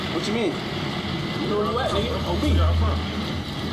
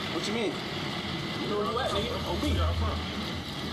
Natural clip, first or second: first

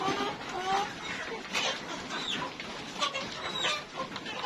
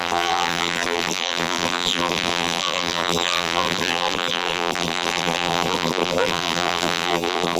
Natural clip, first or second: first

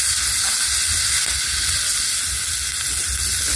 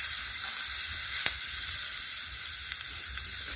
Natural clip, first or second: first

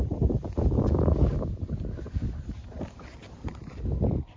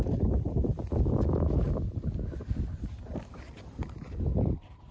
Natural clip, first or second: first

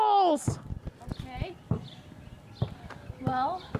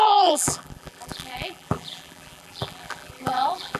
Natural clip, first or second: first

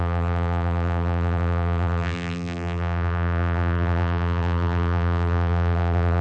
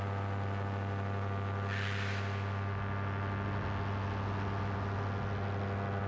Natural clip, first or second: second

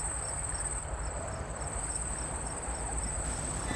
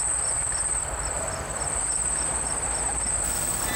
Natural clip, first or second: second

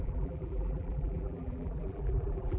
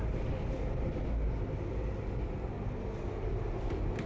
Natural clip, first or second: second